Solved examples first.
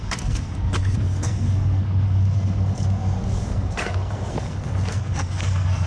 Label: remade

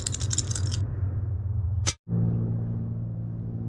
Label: recorded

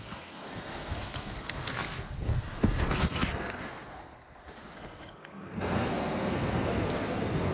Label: remade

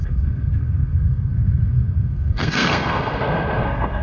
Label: remade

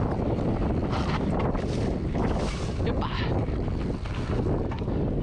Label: recorded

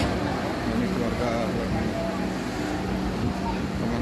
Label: recorded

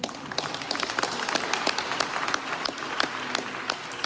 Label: recorded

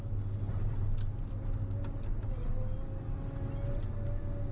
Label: recorded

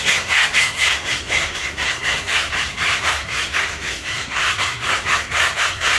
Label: remade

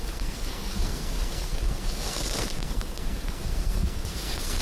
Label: remade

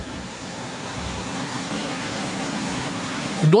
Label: remade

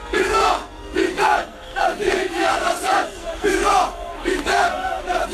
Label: remade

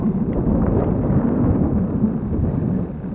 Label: recorded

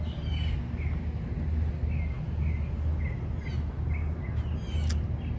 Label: recorded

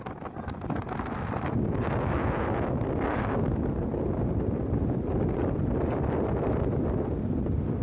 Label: recorded